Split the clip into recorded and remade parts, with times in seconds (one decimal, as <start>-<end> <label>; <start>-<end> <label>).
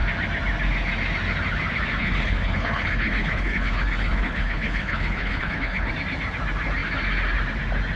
0.0-2.0 recorded; 2.0-5.9 remade; 5.9-8.0 recorded